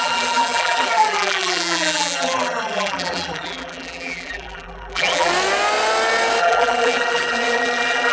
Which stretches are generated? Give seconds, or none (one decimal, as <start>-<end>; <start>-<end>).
0.0-5.3; 6.4-8.1